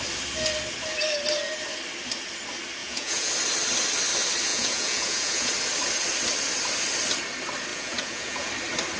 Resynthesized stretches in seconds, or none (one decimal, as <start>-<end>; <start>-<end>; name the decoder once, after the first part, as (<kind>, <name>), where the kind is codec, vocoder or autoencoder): 2.8-3.3 (vocoder, Vocos); 4.5-5.5; 7.7-8.5